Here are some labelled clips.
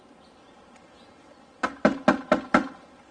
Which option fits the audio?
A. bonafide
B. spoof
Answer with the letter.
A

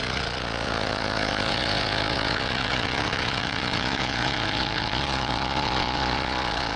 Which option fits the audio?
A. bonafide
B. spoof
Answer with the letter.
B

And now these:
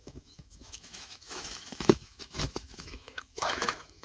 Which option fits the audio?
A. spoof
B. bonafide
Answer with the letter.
A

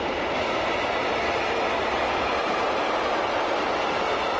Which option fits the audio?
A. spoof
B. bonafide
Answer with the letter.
B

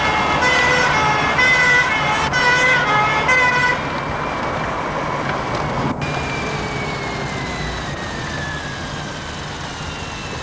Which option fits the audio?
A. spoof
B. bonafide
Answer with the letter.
B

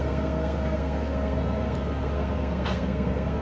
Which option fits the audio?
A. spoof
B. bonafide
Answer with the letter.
A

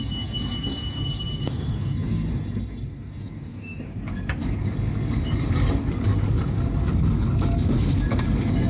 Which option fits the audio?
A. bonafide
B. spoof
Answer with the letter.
B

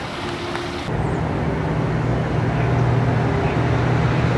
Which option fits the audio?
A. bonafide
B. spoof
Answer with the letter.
A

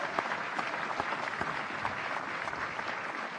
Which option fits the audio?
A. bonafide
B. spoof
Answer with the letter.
A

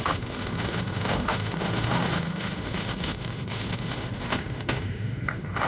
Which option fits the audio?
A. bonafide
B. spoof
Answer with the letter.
B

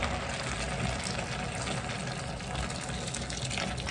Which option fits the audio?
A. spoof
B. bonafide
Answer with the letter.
B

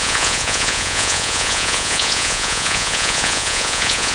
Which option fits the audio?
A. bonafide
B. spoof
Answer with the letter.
B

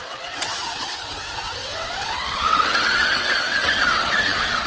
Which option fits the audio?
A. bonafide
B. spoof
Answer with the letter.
B